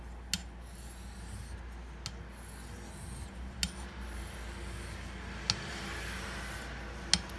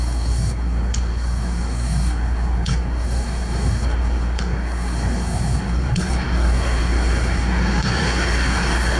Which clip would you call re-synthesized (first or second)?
second